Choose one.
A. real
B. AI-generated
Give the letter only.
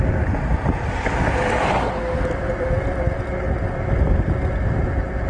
A